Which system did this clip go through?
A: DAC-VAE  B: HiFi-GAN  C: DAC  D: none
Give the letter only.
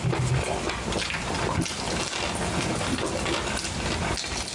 D